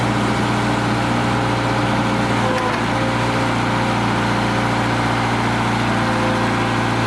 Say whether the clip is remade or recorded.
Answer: recorded